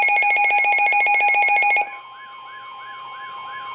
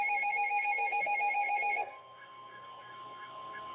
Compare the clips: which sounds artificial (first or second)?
second